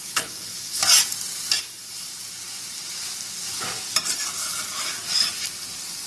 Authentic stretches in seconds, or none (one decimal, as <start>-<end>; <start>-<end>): 0.8-1.6; 2.1-6.1